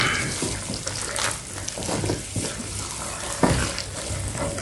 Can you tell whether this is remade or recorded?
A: recorded